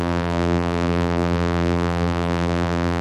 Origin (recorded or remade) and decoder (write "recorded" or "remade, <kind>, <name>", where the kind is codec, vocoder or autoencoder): remade, vocoder, BigVGAN v2